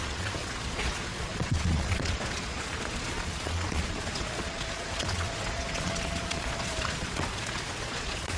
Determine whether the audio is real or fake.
fake